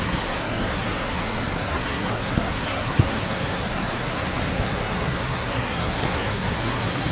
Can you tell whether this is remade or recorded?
remade